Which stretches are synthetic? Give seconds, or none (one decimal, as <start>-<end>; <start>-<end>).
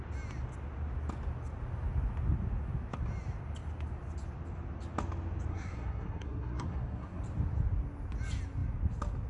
5.5-7.2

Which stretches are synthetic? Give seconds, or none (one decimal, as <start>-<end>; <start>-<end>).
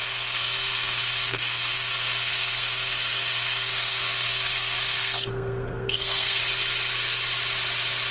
0.0-6.4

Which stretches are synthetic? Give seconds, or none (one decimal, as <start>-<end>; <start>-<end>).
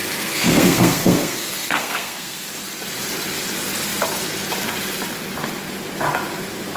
0.0-2.5